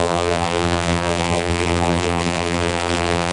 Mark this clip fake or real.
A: fake